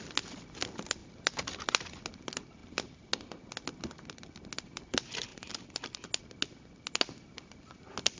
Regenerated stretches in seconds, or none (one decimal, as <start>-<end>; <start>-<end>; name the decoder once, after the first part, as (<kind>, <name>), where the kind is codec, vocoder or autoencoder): none